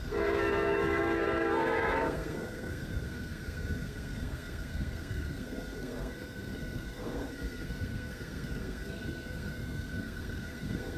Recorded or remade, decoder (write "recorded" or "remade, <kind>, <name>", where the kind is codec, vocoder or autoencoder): remade, codec, SNAC